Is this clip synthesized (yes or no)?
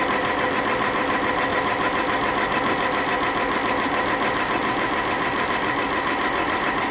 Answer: no